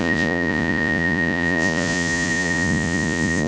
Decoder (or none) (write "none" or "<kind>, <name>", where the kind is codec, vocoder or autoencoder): vocoder, Vocos